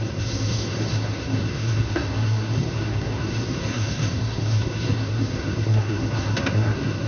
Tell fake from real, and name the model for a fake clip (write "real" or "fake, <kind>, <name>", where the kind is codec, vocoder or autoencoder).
fake, codec, SNAC